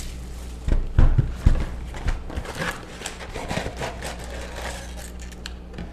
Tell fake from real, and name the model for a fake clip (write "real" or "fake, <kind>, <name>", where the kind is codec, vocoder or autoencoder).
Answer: real